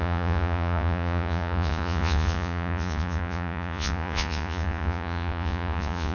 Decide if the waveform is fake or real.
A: fake